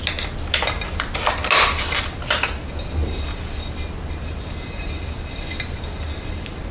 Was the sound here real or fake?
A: real